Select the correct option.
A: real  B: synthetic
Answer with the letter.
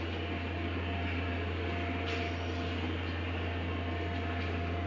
A